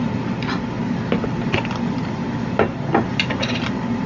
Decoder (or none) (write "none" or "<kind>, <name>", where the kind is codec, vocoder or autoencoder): none